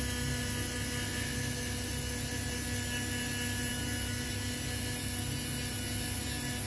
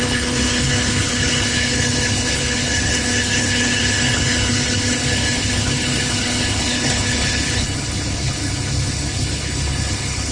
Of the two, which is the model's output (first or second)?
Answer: second